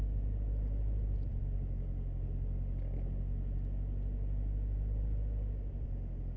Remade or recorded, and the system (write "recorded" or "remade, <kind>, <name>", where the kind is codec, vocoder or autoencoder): recorded